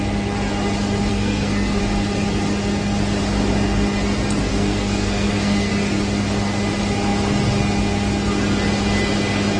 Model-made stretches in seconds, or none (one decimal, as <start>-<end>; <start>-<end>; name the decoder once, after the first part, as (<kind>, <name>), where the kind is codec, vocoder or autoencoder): 1.1-1.8 (codec, SNAC); 4.5-5.7